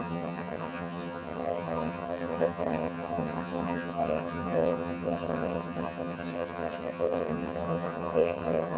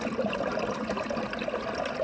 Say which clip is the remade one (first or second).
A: first